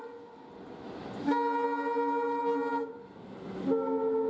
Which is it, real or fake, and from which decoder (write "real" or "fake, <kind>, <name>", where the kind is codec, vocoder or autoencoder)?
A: real